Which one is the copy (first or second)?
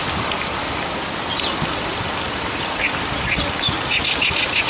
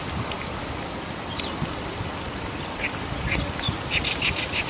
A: second